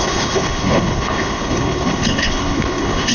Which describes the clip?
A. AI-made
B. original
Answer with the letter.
A